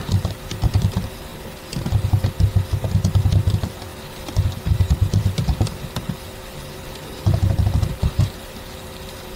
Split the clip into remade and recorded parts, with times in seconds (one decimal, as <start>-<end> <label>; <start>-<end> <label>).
0.0-1.3 remade; 1.3-3.5 recorded; 3.5-9.4 remade